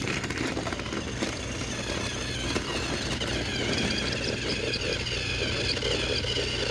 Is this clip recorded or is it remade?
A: recorded